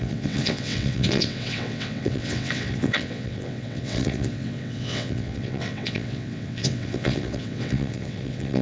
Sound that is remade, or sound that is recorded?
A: remade